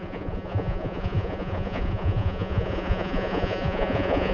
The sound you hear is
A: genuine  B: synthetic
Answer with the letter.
B